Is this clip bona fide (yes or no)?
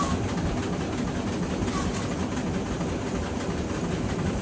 yes